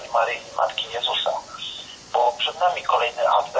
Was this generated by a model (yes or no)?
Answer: yes